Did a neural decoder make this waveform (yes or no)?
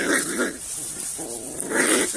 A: no